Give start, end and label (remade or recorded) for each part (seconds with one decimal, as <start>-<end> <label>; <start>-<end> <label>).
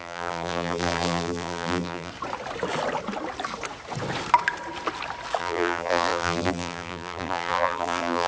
0.0-2.1 remade; 2.1-5.4 recorded; 5.4-8.3 remade